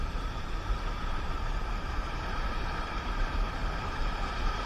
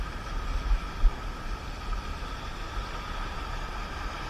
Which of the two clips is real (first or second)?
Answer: second